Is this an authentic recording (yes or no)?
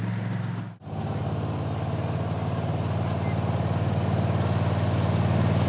yes